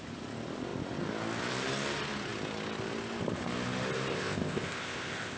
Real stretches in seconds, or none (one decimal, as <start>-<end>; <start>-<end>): 0.0-4.1